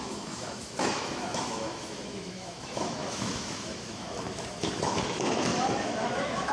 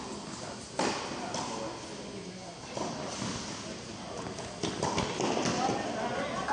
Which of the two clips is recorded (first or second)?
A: second